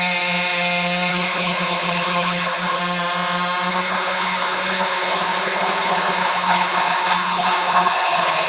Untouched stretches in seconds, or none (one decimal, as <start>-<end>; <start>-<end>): 0.0-1.1; 2.8-3.7